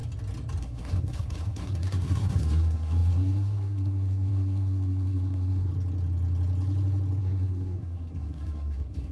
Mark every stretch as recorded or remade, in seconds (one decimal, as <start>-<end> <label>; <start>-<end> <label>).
0.0-0.6 recorded; 0.6-5.7 remade; 5.7-7.2 recorded; 7.2-9.1 remade